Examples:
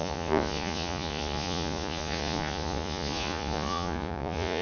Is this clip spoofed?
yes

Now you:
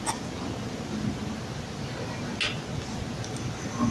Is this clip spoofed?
no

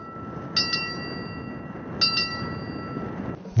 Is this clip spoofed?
no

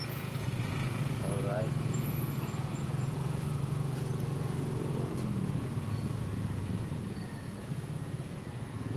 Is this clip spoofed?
yes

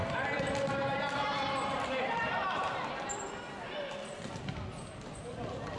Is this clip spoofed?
no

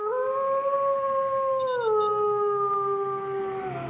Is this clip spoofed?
no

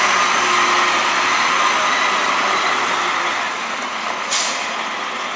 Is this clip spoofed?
no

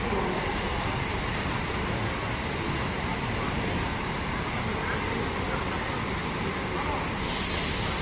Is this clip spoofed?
no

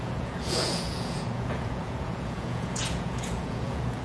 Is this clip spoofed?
yes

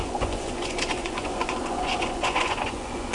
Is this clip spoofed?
yes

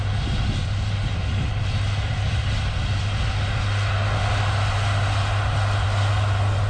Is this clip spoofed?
no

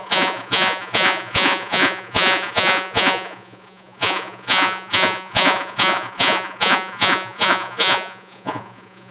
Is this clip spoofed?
yes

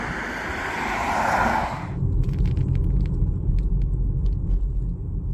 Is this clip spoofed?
no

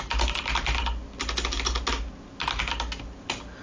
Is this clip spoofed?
no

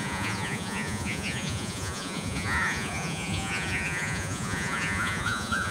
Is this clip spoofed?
yes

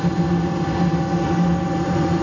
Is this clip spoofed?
no